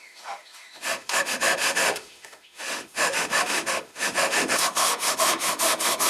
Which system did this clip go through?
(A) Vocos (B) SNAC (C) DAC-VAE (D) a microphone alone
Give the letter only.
C